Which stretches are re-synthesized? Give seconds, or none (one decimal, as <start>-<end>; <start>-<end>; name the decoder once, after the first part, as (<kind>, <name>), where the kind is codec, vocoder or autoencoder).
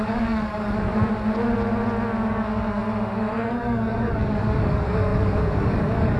0.0-0.9 (codec, DAC); 2.3-2.8; 3.6-6.2